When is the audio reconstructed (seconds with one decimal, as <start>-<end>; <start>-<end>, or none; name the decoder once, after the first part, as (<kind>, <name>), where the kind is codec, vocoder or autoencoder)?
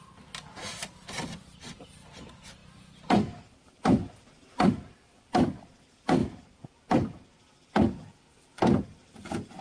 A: none